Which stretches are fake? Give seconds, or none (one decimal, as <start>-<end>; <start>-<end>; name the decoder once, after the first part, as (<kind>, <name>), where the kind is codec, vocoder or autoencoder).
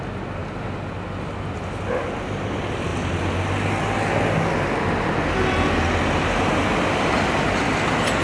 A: none